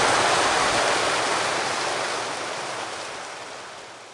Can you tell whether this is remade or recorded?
recorded